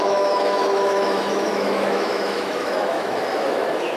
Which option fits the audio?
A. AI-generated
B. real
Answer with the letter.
A